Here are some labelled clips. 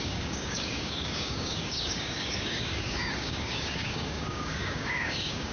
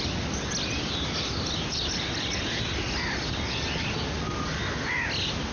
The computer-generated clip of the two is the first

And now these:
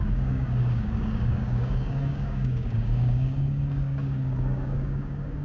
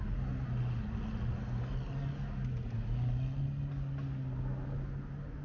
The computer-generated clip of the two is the first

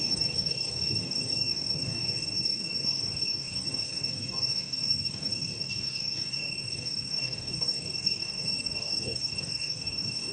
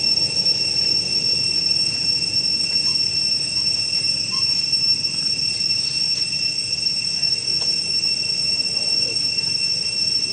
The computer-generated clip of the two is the first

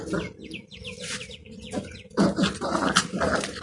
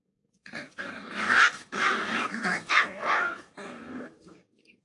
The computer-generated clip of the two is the second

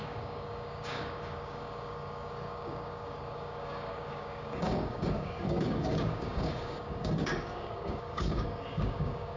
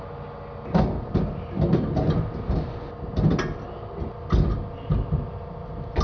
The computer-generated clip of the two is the first